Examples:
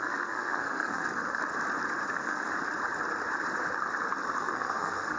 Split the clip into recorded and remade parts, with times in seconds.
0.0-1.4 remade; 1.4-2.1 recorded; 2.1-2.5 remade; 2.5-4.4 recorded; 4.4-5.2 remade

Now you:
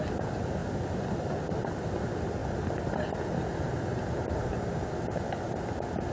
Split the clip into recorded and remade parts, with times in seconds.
0.0-0.6 recorded; 0.6-1.9 remade; 1.9-2.4 recorded; 2.4-3.5 remade; 3.5-6.1 recorded